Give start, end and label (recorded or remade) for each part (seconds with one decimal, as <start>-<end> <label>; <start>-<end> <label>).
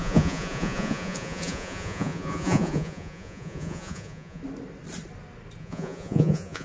0.0-4.4 remade; 4.4-5.6 recorded; 5.6-6.6 remade